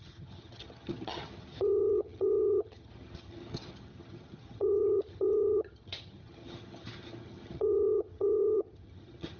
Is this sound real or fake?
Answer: fake